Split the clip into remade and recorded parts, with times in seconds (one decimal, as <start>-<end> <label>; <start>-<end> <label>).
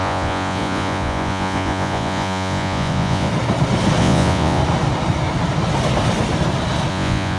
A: 0.0-3.3 remade; 3.3-4.0 recorded; 4.0-4.6 remade; 4.6-6.9 recorded; 6.9-7.4 remade